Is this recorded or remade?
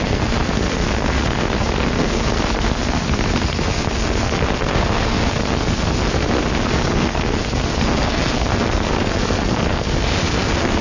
remade